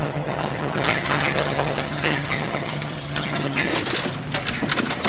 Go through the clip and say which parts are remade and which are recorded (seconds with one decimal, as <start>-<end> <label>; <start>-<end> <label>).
0.0-3.7 remade; 3.7-5.1 recorded